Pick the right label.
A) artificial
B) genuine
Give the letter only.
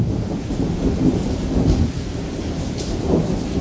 B